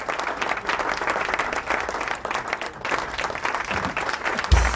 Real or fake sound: real